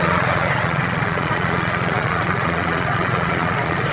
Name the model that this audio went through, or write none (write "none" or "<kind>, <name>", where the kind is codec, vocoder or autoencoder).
vocoder, Vocos